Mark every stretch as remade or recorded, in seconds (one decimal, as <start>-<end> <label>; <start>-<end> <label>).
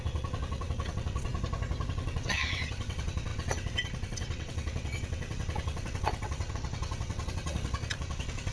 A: 0.0-1.3 remade; 1.3-1.9 recorded; 1.9-8.5 remade